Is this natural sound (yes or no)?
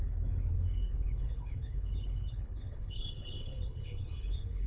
no